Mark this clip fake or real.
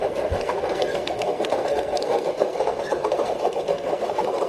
fake